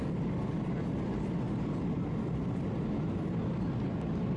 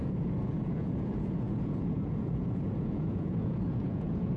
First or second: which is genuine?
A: first